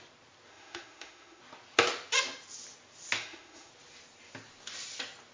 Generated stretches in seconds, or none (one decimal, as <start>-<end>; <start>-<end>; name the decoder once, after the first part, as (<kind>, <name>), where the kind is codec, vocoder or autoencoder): 0.5-1.4 (autoencoder, DAC-VAE); 3.2-3.7